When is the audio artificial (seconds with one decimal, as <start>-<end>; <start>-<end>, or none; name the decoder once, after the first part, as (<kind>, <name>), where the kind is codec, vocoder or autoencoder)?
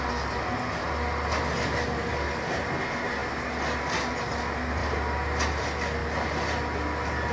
none